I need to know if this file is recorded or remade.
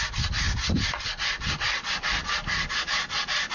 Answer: recorded